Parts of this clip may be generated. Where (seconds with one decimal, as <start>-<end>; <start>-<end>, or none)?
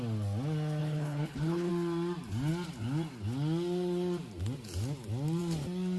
0.8-1.7